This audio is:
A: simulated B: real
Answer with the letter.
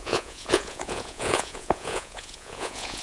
A